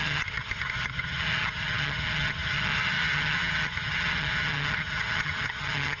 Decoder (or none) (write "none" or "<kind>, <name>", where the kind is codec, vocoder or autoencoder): vocoder, HiFi-GAN